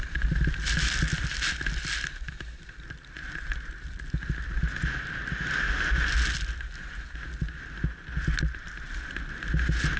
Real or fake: real